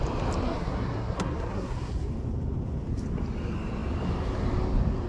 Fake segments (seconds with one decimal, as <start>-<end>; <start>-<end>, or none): 0.4-2.1